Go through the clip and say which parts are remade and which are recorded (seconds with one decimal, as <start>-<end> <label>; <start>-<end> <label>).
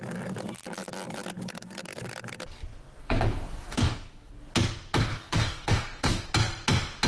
0.0-3.0 recorded; 3.0-4.3 remade; 4.3-5.1 recorded; 5.1-6.3 remade; 6.3-7.1 recorded